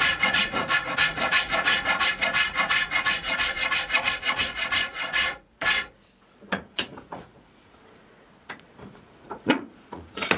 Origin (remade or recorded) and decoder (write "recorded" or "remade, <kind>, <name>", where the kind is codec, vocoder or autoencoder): remade, vocoder, Vocos